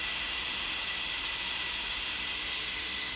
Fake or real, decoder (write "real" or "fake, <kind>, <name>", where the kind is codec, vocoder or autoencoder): real